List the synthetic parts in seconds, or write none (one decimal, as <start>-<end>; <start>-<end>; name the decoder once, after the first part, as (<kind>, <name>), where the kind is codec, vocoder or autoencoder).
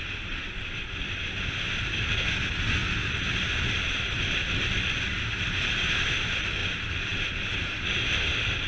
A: 0.0-2.8 (vocoder, BigVGAN v2); 4.3-4.7; 5.2-8.7